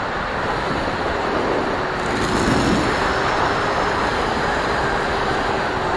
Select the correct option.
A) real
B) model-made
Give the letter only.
A